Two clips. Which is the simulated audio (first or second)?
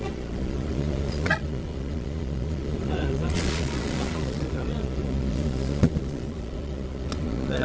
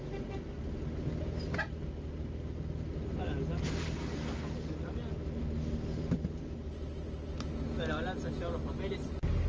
first